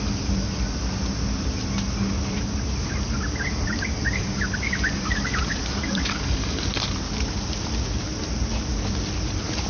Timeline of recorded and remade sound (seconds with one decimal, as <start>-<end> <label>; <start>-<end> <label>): 0.0-5.8 recorded; 5.8-6.6 remade; 6.6-9.7 recorded